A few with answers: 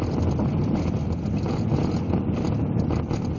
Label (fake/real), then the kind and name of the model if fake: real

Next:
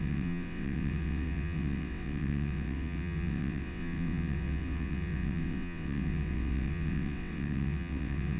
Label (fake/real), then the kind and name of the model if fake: fake, vocoder, WaveNeXt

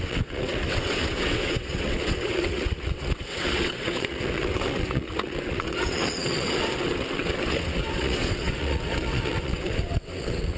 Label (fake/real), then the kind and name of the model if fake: fake, vocoder, WaveNeXt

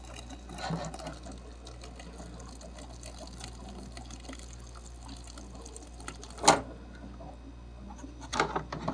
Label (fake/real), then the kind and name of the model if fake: real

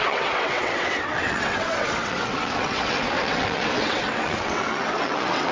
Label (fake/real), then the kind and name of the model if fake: fake, vocoder, WaveNeXt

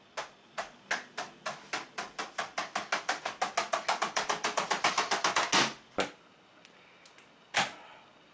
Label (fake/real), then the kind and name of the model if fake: real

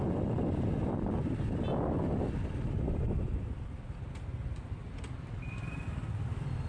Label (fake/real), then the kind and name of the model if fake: real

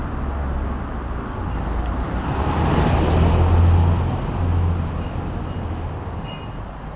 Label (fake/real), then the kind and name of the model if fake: real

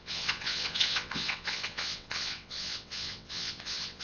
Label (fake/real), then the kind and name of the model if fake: fake, vocoder, WaveNeXt